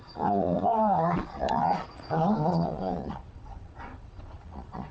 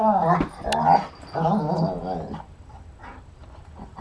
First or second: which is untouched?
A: second